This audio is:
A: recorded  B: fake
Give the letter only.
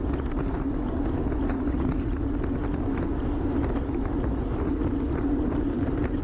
A